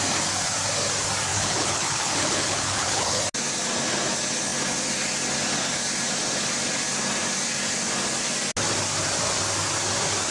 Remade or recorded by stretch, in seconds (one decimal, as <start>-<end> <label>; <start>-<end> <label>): 0.0-1.3 recorded; 1.3-3.2 remade; 3.2-10.3 recorded